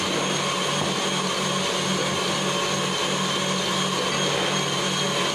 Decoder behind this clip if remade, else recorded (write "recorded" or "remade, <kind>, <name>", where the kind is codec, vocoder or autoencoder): recorded